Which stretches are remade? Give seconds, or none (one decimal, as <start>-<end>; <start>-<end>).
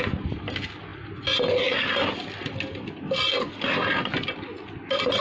none